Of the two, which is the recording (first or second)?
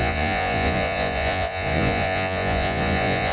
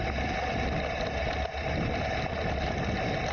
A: second